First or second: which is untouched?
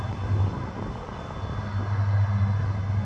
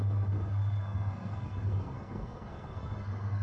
first